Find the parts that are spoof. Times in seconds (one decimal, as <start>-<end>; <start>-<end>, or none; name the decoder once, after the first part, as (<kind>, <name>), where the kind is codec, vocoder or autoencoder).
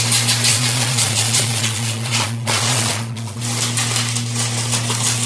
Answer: 0.5-3.4 (vocoder, Vocos)